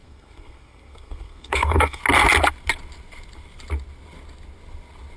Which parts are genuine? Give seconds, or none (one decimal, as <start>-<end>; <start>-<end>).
2.0-5.2